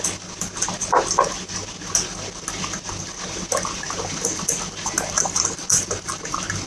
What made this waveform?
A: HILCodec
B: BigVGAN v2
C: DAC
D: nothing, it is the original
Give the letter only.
D